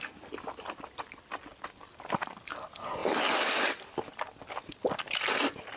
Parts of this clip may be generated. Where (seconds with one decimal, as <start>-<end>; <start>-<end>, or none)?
none